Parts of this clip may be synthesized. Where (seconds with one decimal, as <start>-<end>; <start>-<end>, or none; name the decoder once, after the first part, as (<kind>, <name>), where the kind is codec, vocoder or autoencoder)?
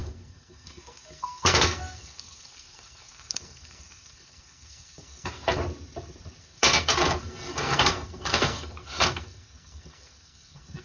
0.0-5.6 (codec, SNAC); 6.4-10.8